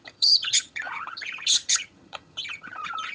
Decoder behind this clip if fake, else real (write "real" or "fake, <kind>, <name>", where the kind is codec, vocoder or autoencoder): fake, vocoder, HiFi-GAN